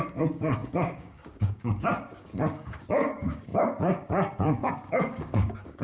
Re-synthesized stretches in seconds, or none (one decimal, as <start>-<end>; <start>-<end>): 0.0-5.8